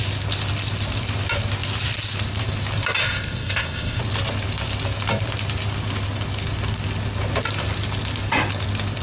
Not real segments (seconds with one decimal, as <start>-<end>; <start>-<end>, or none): 3.0-4.0